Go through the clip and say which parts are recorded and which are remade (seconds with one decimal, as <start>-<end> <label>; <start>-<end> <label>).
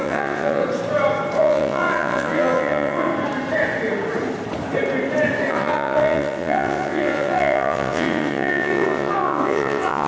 0.0-0.6 remade; 0.6-1.4 recorded; 1.4-3.1 remade; 3.1-5.5 recorded; 5.5-10.1 remade